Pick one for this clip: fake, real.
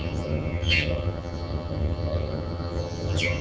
fake